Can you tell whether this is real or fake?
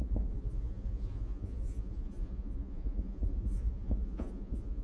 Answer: fake